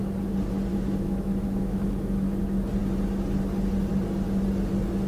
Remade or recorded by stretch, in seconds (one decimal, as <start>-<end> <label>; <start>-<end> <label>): 0.0-0.7 recorded; 0.7-2.4 remade; 2.4-5.1 recorded